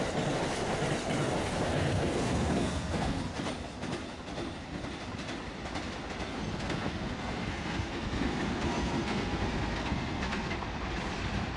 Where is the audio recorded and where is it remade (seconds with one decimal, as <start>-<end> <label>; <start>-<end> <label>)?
0.0-1.7 recorded; 1.7-3.2 remade; 3.2-6.3 recorded; 6.3-10.5 remade; 10.5-11.6 recorded